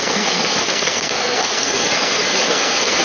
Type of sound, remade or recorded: remade